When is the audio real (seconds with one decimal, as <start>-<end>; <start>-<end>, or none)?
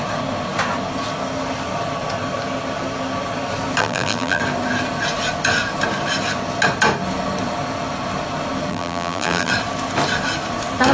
0.0-3.8; 4.4-8.7; 9.5-10.9